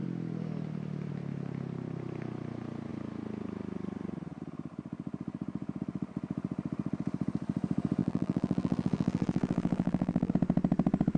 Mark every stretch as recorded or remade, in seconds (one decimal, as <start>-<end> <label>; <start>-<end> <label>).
0.0-8.0 recorded; 8.0-10.3 remade; 10.3-11.2 recorded